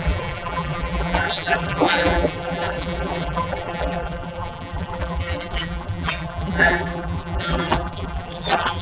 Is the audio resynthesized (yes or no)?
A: yes